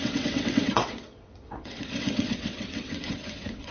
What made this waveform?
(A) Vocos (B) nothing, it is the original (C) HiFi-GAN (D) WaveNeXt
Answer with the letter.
D